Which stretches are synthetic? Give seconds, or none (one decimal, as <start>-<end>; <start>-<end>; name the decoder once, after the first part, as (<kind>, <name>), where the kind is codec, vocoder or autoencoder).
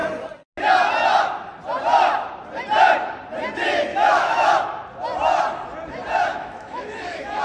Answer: 3.9-4.5 (autoencoder, DAC-VAE); 6.3-7.4